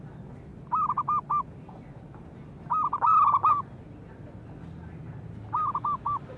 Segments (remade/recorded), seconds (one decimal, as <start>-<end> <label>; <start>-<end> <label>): 0.0-6.4 recorded